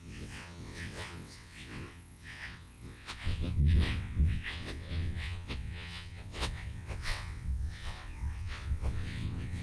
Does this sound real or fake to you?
fake